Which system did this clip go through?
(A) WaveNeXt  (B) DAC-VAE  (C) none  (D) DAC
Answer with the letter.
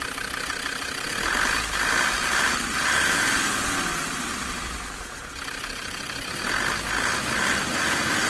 C